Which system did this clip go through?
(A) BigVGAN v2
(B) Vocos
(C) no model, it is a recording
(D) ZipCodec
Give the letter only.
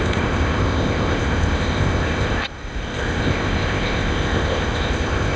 D